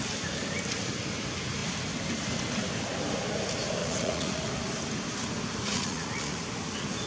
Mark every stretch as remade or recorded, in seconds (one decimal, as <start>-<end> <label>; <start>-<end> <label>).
0.0-3.8 recorded; 3.8-4.5 remade; 4.5-5.7 recorded; 5.7-6.4 remade; 6.4-7.1 recorded